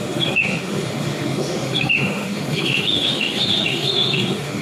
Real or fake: fake